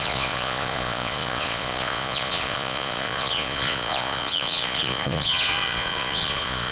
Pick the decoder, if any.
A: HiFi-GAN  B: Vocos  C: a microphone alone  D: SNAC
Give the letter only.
B